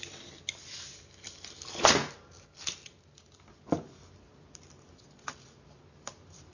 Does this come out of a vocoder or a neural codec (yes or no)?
no